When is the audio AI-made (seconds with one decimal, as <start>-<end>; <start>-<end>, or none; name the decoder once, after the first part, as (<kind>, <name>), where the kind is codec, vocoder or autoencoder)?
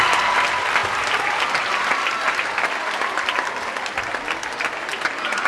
0.0-4.9 (vocoder, BigVGAN v2)